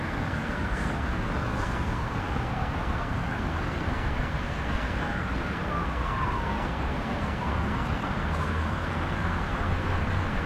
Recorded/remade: remade